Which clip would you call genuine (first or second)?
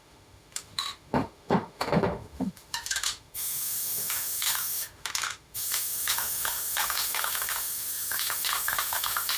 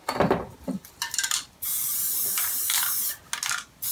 second